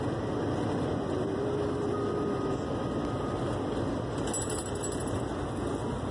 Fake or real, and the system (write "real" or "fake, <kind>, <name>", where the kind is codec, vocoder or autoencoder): real